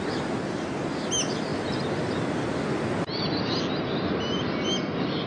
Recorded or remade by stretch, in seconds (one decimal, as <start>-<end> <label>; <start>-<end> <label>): 0.0-5.3 recorded